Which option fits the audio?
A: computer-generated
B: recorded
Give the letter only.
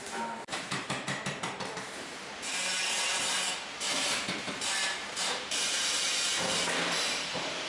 A